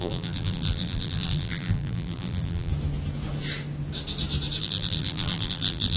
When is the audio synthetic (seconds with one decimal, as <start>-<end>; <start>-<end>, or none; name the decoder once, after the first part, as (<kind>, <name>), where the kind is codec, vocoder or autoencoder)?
0.0-2.7 (vocoder, BigVGAN v2); 4.6-6.0